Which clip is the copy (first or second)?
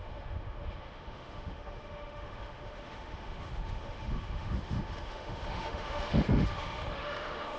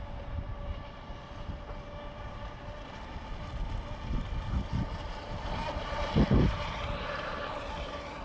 first